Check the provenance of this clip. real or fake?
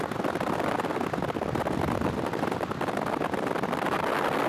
real